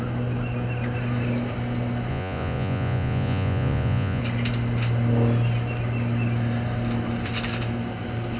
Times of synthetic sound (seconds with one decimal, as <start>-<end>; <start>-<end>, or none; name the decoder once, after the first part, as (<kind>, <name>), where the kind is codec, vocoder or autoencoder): 2.1-4.2 (vocoder, Vocos)